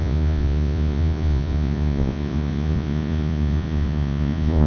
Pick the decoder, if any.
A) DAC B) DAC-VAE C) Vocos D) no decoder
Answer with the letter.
C